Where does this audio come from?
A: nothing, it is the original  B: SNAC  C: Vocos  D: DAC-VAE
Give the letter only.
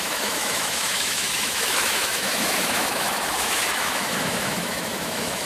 D